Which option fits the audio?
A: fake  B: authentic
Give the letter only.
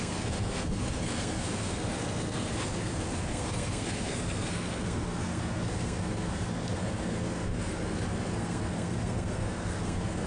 A